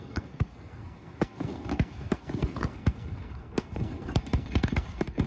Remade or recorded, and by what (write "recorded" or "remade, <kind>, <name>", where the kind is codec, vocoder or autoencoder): remade, codec, SNAC